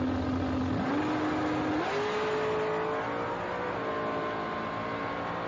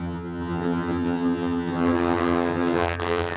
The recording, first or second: first